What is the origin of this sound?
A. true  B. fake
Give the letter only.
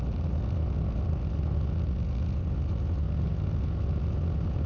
A